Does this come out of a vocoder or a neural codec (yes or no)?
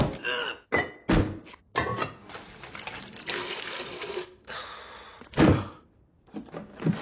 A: no